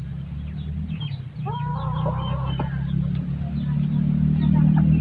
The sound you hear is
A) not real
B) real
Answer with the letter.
B